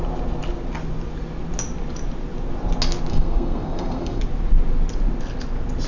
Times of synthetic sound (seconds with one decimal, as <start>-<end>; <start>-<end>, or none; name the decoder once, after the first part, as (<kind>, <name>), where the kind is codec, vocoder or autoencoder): 3.1-4.2 (codec, SNAC)